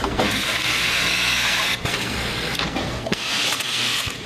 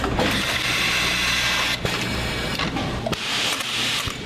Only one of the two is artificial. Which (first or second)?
first